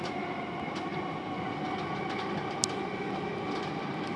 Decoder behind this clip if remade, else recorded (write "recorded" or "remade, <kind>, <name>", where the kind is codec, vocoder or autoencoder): recorded